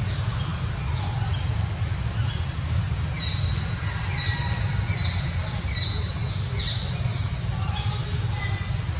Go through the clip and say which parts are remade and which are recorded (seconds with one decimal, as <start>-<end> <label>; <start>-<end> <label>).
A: 0.0-9.0 recorded